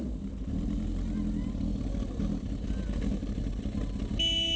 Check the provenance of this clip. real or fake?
real